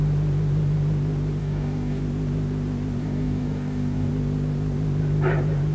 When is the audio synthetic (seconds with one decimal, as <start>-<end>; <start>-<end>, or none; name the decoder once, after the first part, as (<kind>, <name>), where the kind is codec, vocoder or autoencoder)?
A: 1.4-2.0 (codec, DAC); 3.0-4.1

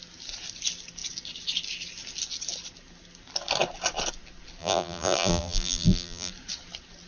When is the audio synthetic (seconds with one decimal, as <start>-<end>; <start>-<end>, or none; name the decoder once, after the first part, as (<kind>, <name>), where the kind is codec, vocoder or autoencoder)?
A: 4.6-6.3 (vocoder, BigVGAN v2)

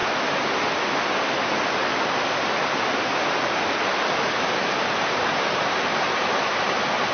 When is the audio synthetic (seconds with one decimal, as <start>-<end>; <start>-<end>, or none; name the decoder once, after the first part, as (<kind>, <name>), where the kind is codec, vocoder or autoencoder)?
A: 4.3-7.1 (vocoder, BigVGAN v2)

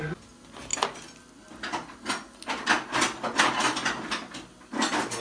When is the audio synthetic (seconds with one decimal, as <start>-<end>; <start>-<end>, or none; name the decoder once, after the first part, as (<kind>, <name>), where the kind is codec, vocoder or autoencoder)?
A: none